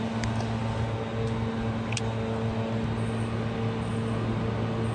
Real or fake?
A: real